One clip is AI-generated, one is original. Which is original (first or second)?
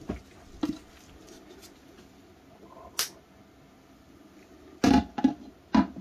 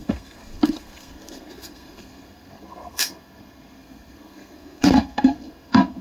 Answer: first